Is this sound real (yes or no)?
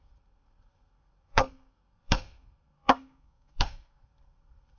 no